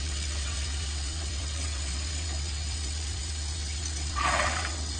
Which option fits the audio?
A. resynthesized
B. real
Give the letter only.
A